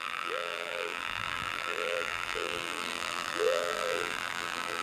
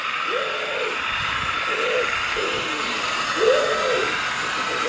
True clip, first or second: second